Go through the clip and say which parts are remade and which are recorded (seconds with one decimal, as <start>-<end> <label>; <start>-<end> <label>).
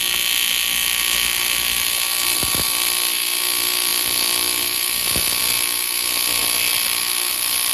0.0-7.7 recorded